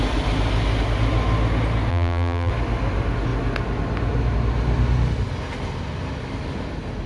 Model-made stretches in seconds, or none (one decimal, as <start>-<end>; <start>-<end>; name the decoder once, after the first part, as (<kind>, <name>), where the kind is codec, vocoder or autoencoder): 1.9-2.5 (vocoder, BigVGAN v2)